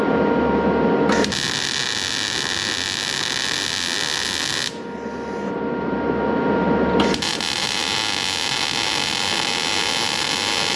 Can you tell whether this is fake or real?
real